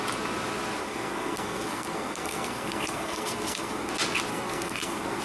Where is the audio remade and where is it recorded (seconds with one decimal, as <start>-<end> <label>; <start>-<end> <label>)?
0.0-0.8 recorded; 0.8-3.9 remade; 3.9-4.3 recorded; 4.3-5.2 remade